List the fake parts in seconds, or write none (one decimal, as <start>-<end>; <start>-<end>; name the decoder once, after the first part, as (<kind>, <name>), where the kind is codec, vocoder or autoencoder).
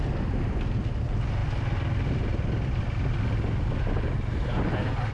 none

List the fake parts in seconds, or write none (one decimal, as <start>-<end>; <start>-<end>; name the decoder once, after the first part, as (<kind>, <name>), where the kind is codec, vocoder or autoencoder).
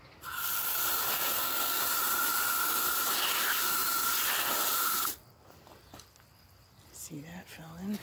1.3-1.8 (codec, SNAC)